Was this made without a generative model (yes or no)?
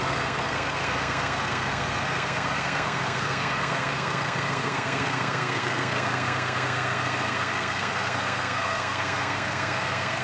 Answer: no